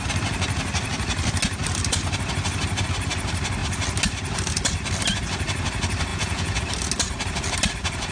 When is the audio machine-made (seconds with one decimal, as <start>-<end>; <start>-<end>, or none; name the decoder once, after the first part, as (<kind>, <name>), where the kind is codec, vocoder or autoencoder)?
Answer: 6.1-6.6 (vocoder, Vocos)